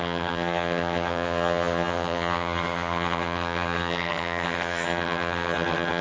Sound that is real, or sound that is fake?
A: fake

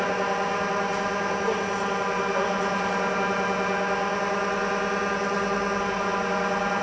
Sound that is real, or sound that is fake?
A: real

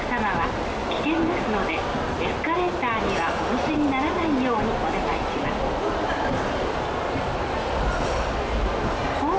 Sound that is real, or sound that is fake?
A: real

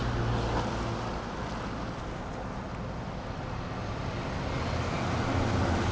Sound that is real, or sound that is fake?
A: real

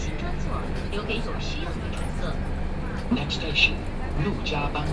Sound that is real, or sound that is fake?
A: real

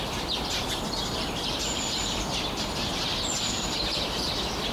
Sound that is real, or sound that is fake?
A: fake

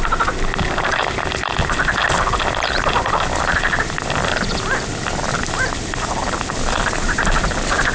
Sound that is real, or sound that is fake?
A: real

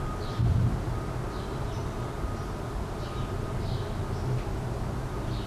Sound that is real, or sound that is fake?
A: real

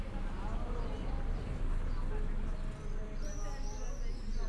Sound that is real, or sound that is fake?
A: real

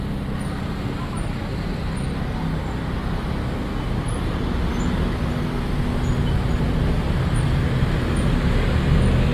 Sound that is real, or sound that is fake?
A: real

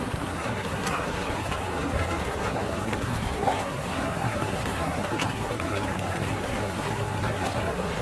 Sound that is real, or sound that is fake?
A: fake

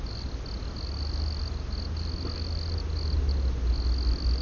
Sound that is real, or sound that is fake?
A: real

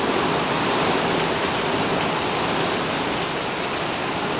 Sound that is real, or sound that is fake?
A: real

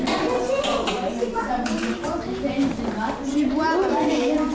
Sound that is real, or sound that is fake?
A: real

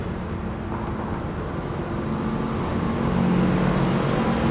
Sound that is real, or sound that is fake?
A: real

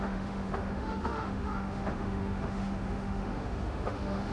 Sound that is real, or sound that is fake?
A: fake